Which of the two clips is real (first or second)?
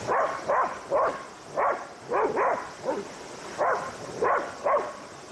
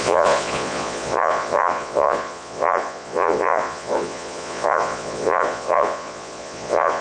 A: first